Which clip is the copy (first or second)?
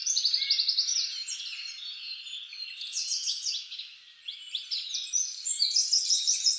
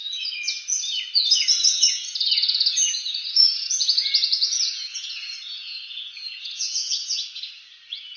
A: second